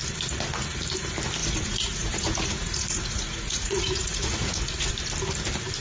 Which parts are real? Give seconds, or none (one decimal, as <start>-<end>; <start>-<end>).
0.0-1.4; 4.9-5.8

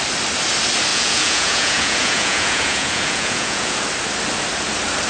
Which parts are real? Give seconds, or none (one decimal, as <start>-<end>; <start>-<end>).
0.0-0.9; 3.8-5.1